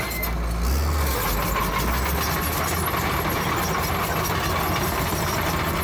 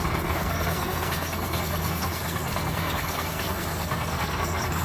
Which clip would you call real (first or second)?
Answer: first